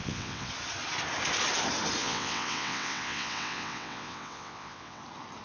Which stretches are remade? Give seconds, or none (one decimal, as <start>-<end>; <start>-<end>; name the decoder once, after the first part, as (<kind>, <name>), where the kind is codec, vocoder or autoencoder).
0.0-0.5 (vocoder, WaveNeXt); 2.0-5.0